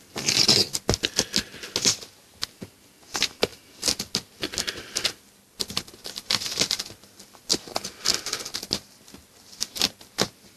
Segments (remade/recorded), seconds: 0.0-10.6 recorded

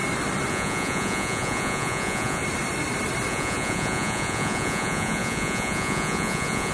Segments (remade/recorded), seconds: 0.0-0.5 recorded; 0.5-2.4 remade; 2.4-3.3 recorded; 3.3-6.7 remade

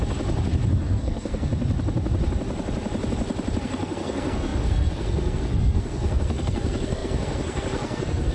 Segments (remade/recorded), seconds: 0.0-0.8 recorded; 0.8-1.5 remade; 1.5-3.6 recorded; 3.6-8.3 remade